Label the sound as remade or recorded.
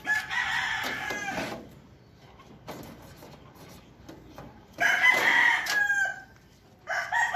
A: recorded